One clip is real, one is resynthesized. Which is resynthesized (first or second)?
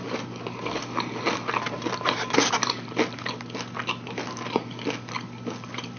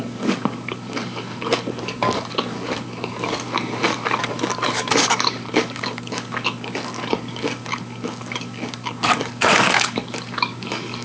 second